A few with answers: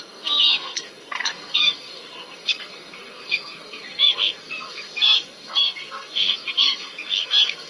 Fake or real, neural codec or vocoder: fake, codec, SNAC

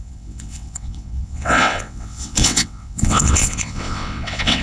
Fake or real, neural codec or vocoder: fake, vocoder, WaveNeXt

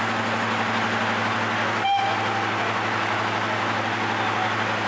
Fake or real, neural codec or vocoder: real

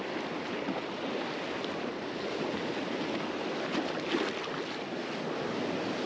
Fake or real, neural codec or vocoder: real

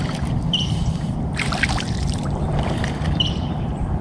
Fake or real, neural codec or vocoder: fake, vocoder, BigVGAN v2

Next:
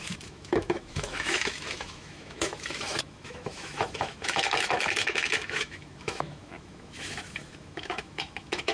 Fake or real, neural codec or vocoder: fake, autoencoder, DAC-VAE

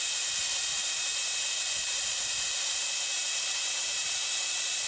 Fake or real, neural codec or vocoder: fake, vocoder, BigVGAN v2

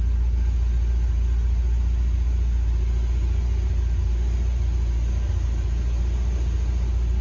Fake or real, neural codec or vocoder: real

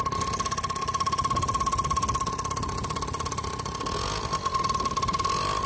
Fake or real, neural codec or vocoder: real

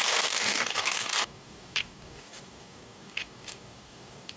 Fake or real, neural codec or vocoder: fake, codec, DAC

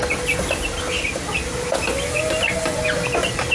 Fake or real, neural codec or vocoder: real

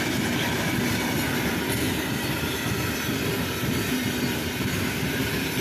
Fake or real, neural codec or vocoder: real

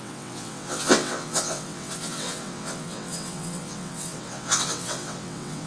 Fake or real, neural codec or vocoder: fake, vocoder, WaveNeXt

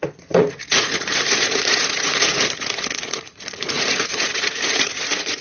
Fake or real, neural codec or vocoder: fake, vocoder, Vocos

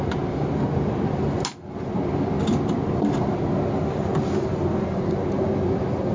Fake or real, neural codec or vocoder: real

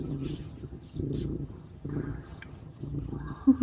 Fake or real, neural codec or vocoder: fake, vocoder, HiFi-GAN